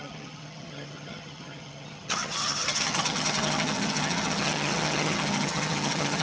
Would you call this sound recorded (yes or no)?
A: no